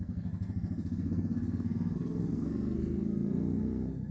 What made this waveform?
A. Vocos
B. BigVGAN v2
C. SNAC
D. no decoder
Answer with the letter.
C